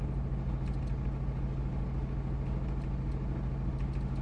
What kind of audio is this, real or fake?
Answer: real